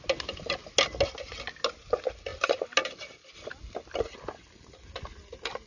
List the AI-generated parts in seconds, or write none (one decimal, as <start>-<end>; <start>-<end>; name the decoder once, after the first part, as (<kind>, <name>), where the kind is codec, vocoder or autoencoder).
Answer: none